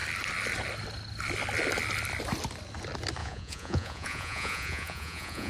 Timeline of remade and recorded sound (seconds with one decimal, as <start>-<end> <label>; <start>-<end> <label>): 0.0-3.2 recorded; 3.2-5.5 remade